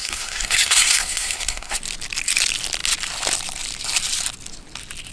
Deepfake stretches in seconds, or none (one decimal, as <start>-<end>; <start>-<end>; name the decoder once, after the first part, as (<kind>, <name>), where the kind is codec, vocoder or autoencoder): 0.0-1.8 (codec, SNAC)